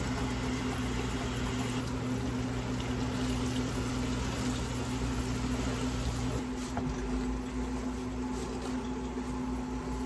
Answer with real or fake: real